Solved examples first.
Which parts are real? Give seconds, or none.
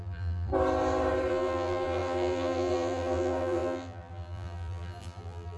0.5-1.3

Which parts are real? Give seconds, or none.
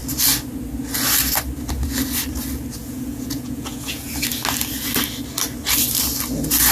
0.0-2.8; 4.1-6.7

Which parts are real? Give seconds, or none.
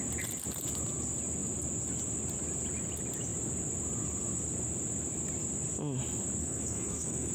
0.0-6.4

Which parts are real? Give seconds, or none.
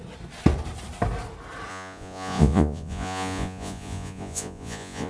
0.0-1.7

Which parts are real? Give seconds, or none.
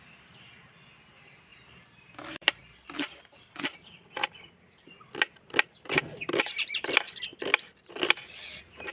0.0-1.5; 6.2-7.3; 7.9-8.9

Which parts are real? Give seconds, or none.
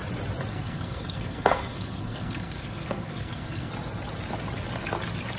0.0-0.5; 3.7-5.4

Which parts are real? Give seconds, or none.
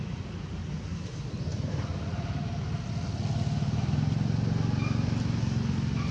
0.0-1.5; 2.6-6.1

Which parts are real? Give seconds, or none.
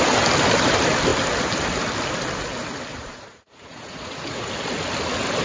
0.0-2.9; 4.5-5.4